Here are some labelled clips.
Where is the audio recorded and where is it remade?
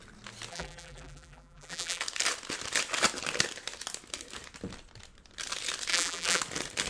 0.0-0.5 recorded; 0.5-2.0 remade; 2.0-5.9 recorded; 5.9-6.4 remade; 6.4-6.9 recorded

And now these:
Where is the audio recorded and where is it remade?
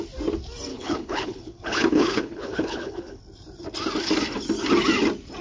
0.0-0.7 recorded; 0.7-3.2 remade; 3.2-5.4 recorded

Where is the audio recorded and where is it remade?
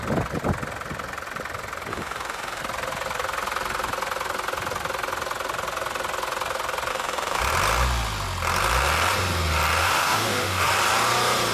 0.0-1.9 recorded; 1.9-2.6 remade; 2.6-6.9 recorded; 6.9-7.4 remade; 7.4-9.8 recorded; 9.8-10.7 remade; 10.7-11.5 recorded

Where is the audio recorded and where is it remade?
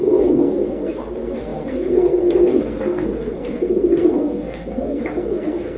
0.0-5.8 remade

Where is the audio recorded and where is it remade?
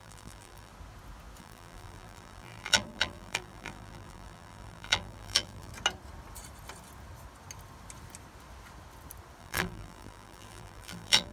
0.0-0.7 remade; 0.7-1.4 recorded; 1.4-5.7 remade; 5.7-9.4 recorded; 9.4-11.3 remade